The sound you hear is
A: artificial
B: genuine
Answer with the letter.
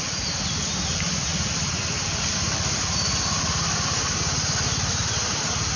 B